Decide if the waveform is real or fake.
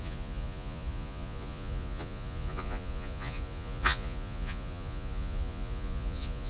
fake